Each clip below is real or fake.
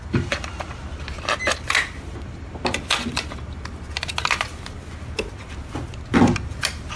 real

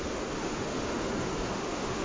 fake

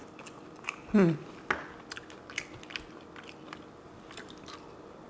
real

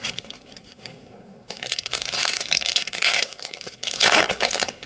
fake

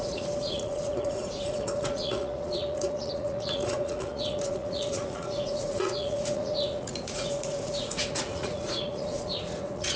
fake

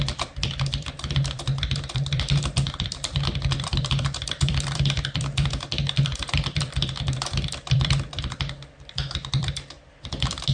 fake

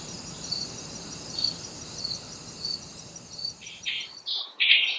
fake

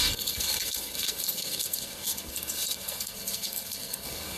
fake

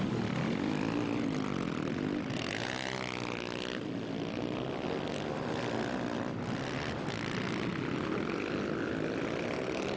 real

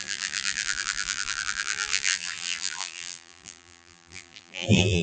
fake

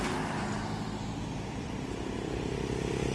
fake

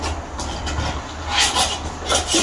real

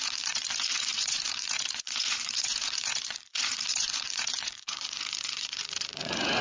fake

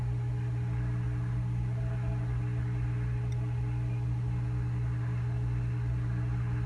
real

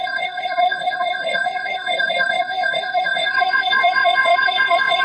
fake